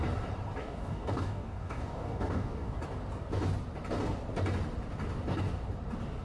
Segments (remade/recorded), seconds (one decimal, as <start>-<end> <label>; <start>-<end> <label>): 0.0-0.6 recorded; 0.6-2.8 remade; 2.8-6.2 recorded